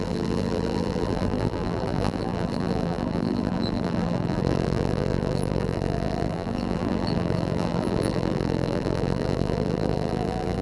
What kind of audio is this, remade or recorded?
remade